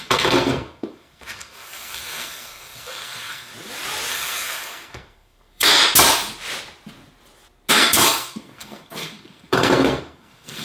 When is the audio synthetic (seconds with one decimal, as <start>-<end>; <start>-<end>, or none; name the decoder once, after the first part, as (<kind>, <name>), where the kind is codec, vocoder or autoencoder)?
0.0-3.5 (codec, SNAC); 4.1-5.8; 7.7-10.6